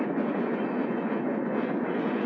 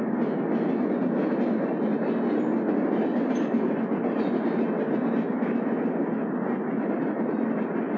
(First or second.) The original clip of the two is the second